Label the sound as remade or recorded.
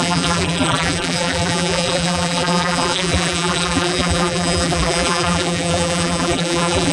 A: remade